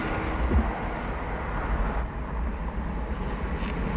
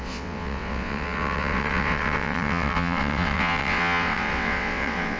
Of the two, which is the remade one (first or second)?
second